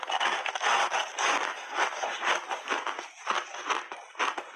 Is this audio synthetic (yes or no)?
no